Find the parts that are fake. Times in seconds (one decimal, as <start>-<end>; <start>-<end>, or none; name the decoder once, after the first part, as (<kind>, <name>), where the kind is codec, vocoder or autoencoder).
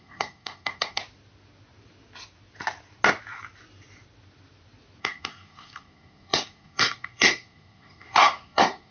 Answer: 0.0-1.0 (codec, SNAC); 5.0-8.9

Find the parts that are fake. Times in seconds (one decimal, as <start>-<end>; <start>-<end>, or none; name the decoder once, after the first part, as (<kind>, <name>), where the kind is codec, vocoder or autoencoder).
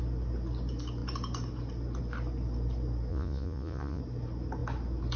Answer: 3.1-4.0 (vocoder, Vocos)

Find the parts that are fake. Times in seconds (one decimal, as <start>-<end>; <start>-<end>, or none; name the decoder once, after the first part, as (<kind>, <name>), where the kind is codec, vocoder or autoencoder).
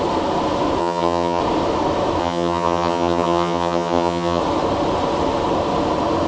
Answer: 0.8-1.4 (vocoder, HiFi-GAN); 2.2-4.4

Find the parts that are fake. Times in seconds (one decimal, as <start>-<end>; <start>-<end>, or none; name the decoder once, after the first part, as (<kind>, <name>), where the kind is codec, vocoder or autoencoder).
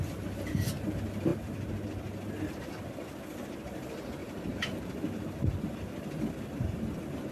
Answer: 4.2-7.3 (vocoder, BigVGAN v2)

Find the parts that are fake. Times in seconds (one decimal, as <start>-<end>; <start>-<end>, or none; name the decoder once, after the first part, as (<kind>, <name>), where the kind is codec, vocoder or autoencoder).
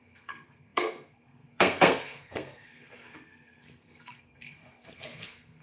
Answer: 0.0-5.6 (codec, SNAC)